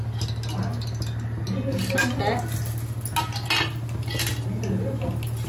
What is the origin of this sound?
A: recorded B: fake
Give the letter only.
A